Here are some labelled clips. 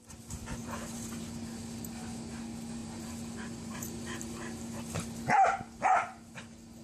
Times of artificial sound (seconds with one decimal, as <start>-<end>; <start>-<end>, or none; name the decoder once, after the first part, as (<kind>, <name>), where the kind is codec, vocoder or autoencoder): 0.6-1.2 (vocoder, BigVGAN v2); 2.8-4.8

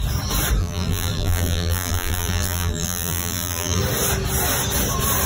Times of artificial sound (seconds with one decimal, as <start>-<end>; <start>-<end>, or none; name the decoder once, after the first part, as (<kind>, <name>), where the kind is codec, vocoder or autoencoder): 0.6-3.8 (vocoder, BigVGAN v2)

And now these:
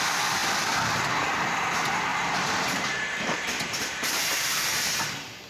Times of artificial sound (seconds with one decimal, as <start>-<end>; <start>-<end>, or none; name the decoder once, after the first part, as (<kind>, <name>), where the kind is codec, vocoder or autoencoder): 2.1-4.2 (vocoder, BigVGAN v2)